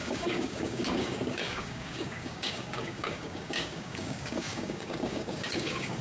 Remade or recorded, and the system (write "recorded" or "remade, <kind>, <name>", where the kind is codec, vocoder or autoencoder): remade, codec, DAC